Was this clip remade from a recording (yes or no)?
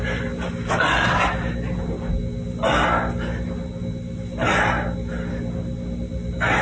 no